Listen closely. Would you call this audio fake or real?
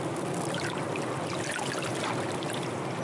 real